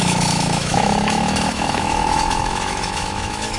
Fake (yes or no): yes